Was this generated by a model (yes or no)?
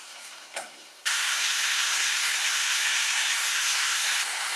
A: yes